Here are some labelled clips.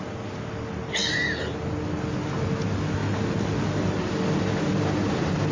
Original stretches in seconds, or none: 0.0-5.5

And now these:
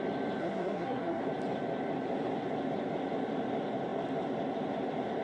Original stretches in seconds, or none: 0.0-0.4; 1.2-5.2

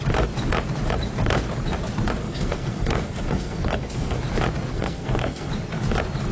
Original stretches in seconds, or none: 0.0-2.2; 4.2-4.7; 5.5-6.3

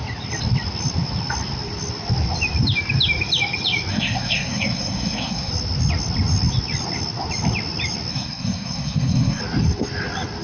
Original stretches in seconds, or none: 0.0-3.9; 5.5-8.1; 9.4-10.4

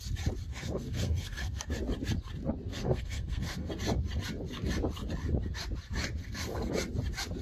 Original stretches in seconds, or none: 0.0-0.5; 1.7-2.7; 3.7-6.2; 6.7-7.4

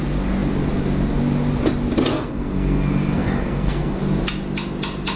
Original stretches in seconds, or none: 0.0-2.1; 4.0-5.2